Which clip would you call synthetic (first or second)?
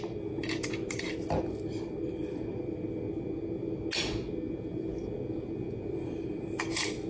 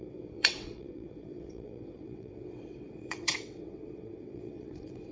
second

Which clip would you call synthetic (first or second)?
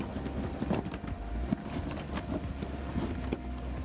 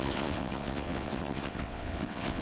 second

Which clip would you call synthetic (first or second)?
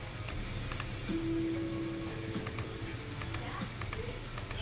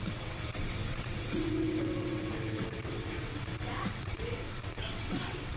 second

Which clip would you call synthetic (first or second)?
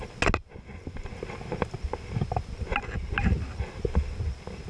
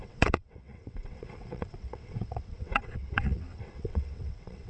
second